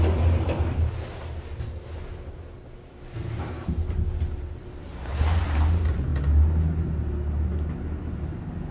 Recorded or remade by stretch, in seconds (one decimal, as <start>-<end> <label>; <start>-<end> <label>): 0.0-8.7 recorded